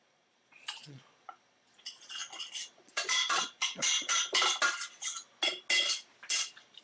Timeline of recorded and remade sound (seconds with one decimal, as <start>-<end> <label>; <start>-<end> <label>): 0.0-2.2 remade; 2.2-2.8 recorded; 2.8-4.2 remade; 4.2-6.8 recorded